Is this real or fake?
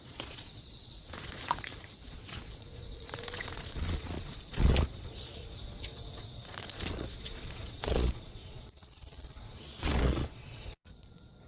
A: fake